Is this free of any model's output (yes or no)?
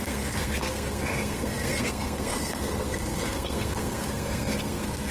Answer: no